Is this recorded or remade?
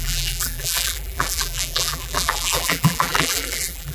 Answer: remade